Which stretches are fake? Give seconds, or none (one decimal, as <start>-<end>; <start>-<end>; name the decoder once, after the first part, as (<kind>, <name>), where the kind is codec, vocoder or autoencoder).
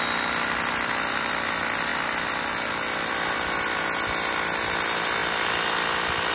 none